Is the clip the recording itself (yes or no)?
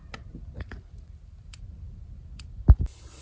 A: yes